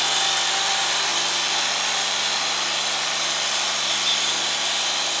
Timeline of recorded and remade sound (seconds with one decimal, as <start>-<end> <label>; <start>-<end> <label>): 0.0-1.1 remade; 1.1-4.2 recorded; 4.2-5.2 remade